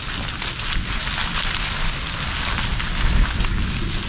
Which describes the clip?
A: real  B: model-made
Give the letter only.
A